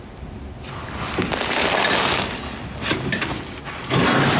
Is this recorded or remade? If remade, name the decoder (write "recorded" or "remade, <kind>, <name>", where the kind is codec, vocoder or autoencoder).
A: recorded